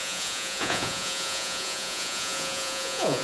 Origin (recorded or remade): remade